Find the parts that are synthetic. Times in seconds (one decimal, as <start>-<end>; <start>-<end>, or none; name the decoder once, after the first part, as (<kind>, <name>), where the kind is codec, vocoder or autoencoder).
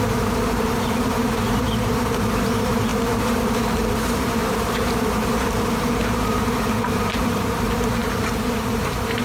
0.0-9.2 (vocoder, BigVGAN v2)